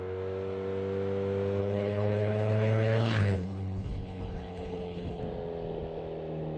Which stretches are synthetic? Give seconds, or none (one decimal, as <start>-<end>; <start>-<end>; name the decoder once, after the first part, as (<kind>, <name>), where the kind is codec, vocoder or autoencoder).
1.6-5.2 (codec, HILCodec)